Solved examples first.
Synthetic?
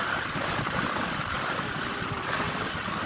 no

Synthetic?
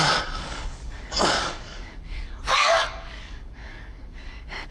yes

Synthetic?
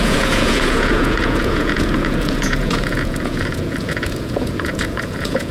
yes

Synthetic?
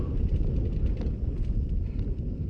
no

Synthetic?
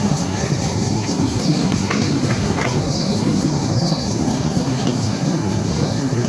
yes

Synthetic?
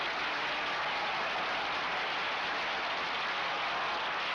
no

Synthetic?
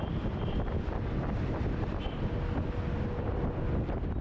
no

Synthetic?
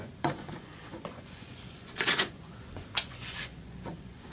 yes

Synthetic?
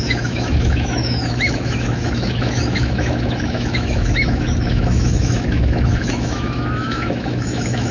yes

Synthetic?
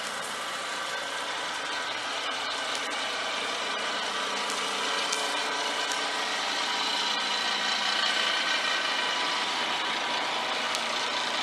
no